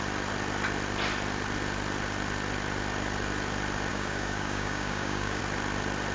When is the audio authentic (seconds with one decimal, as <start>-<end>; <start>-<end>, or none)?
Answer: 0.0-3.9; 5.4-6.1